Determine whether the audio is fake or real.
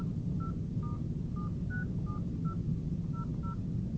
real